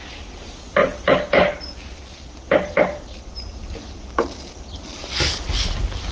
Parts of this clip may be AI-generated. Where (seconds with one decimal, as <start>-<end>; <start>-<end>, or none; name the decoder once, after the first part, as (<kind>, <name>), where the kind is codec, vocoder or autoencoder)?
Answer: none